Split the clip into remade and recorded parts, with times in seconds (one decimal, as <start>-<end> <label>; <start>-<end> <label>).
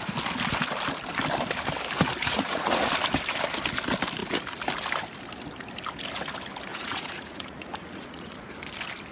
0.0-2.2 recorded; 2.2-2.8 remade; 2.8-6.7 recorded; 6.7-8.6 remade; 8.6-9.1 recorded